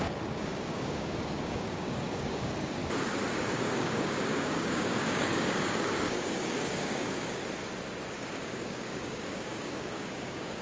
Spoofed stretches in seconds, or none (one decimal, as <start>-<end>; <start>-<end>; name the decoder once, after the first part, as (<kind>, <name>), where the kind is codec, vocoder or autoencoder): 0.0-2.8 (codec, DAC); 3.3-7.4; 8.1-10.6